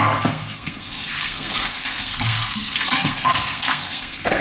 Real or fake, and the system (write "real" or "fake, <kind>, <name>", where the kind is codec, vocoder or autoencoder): fake, codec, SNAC